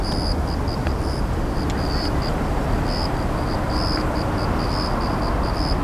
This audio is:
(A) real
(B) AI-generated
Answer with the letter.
A